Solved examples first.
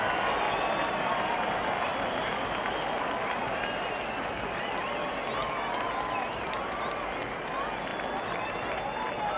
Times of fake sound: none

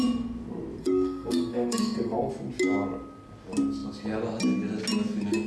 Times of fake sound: 0.8-2.3

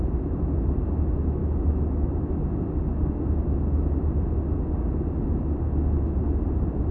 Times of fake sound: 1.4-2.4